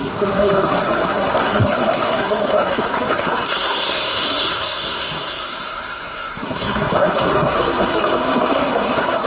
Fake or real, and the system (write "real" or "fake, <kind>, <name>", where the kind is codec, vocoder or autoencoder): fake, codec, SNAC